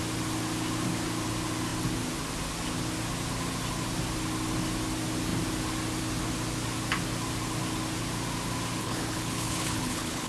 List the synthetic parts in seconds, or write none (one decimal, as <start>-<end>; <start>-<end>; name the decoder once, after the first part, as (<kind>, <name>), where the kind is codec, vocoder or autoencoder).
8.8-10.3 (codec, HILCodec)